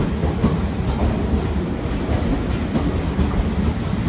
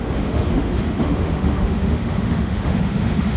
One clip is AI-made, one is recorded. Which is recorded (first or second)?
first